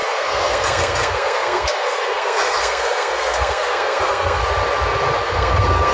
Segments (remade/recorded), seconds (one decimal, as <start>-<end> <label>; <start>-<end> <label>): 0.0-4.4 remade; 4.4-5.2 recorded; 5.2-5.9 remade